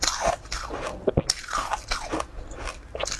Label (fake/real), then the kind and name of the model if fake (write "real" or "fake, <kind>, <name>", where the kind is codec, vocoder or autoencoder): real